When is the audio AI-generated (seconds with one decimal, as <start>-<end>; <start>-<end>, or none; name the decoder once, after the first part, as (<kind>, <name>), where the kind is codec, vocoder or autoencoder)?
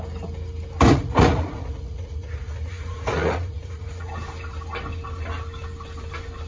0.9-4.1 (vocoder, Vocos)